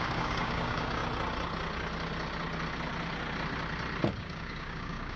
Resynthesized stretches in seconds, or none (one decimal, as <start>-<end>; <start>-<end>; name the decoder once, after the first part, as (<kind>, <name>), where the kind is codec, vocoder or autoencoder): 0.0-1.0 (codec, DAC); 4.1-5.2